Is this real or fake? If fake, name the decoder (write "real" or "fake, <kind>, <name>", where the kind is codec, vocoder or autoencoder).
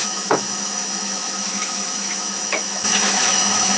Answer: fake, autoencoder, DAC-VAE